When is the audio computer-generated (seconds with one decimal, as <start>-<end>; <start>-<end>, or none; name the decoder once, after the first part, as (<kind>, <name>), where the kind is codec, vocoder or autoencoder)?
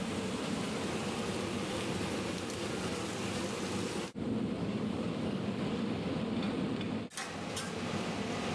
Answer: 4.6-6.1 (codec, DAC)